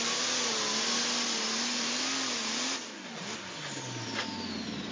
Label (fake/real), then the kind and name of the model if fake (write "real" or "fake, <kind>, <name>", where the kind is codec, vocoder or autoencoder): real